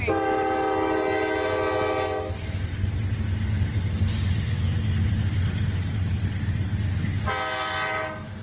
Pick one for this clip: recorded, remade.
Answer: recorded